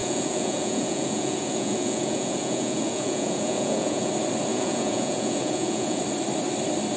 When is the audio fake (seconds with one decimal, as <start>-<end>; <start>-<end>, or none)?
0.0-4.1; 4.5-6.0